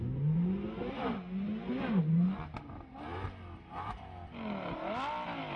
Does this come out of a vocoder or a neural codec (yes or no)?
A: no